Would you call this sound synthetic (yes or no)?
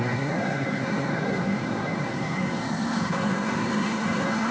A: yes